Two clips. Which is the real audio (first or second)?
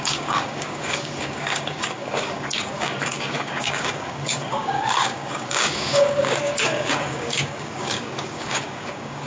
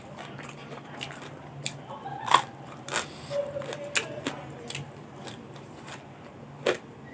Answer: second